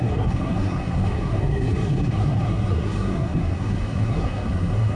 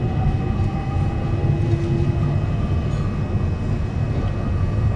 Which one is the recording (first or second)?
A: second